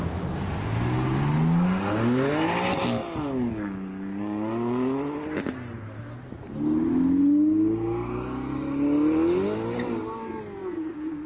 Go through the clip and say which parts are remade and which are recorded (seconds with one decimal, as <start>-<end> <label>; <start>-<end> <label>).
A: 0.0-10.6 recorded; 10.6-11.3 remade